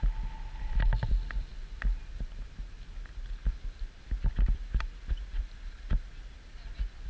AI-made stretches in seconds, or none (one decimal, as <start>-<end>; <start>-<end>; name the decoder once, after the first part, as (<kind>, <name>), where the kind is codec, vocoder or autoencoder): none